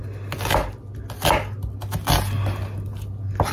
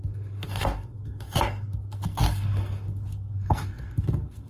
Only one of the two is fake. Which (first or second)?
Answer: second